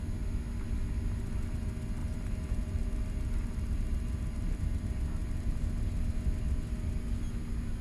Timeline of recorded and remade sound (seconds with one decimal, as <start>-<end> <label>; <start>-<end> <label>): 0.0-2.0 recorded; 2.0-4.6 remade; 4.6-7.8 recorded